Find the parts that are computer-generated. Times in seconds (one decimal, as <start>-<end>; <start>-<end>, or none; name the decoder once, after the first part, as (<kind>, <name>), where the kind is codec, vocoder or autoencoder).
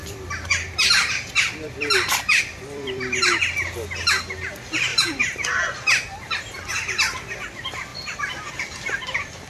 0.0-3.2 (vocoder, BigVGAN v2); 4.9-5.8; 7.9-8.5